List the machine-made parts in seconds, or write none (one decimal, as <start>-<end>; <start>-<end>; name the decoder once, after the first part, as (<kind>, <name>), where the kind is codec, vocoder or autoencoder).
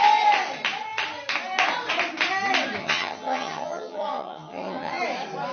2.8-5.0 (vocoder, HiFi-GAN)